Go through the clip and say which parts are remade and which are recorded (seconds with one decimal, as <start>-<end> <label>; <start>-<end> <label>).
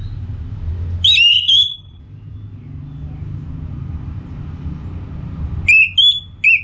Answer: 0.0-1.3 recorded; 1.3-2.0 remade; 2.0-6.6 recorded